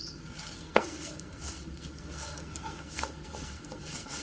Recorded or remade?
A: remade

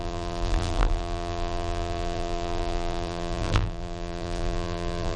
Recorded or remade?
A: remade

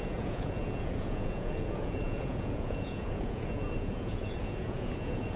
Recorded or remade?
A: remade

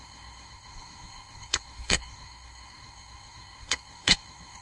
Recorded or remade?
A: remade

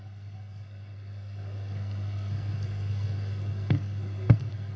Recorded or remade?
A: remade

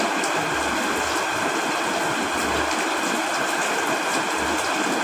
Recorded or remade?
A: recorded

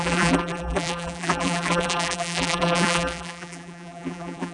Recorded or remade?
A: remade